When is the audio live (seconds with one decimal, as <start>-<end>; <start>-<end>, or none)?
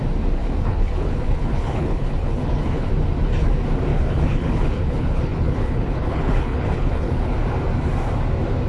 0.0-0.4; 2.9-3.9; 7.3-8.7